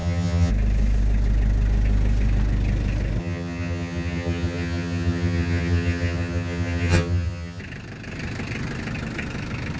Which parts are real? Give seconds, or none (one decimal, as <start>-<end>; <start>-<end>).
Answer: 0.5-3.2; 7.6-9.8